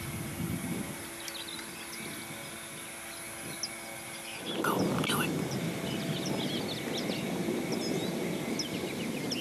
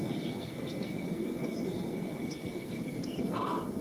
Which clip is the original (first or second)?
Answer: first